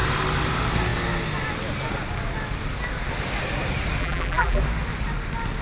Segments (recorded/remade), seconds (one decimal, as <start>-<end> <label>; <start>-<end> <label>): 0.0-4.0 recorded; 4.0-4.6 remade; 4.6-5.6 recorded